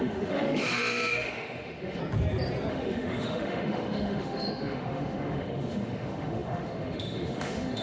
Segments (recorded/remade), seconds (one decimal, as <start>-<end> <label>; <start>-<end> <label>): 0.0-2.0 remade; 2.0-2.7 recorded; 2.7-7.8 remade